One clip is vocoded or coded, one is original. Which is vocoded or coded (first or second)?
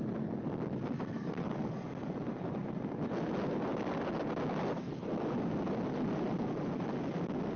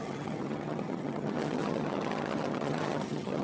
second